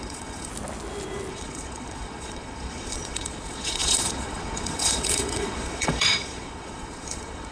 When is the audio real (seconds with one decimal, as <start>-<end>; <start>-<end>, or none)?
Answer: 0.5-1.3